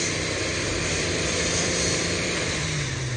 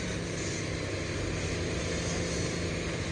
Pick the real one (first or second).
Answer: second